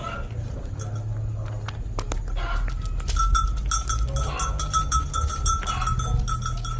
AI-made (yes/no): no